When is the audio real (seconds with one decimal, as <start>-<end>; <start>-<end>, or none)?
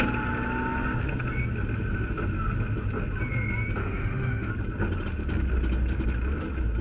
0.0-3.8; 4.5-6.8